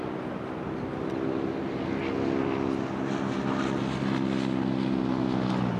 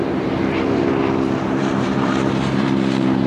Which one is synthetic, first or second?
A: second